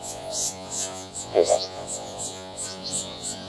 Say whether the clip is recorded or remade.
remade